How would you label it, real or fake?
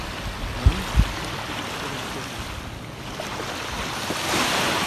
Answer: real